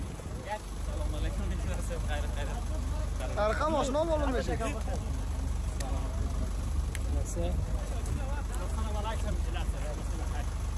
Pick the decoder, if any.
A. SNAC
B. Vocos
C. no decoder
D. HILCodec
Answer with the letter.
C